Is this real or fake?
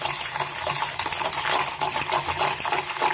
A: real